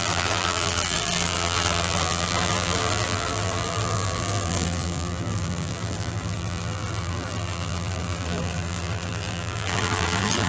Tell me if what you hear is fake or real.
fake